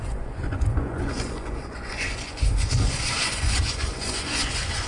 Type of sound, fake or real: fake